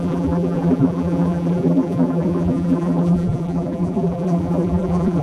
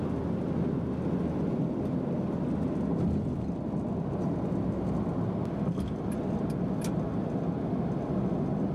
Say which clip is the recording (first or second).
second